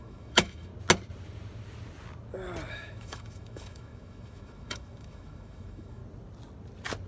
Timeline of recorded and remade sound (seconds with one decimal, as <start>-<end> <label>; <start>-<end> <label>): 0.0-0.7 remade; 0.7-2.7 recorded; 2.7-6.0 remade; 6.0-7.1 recorded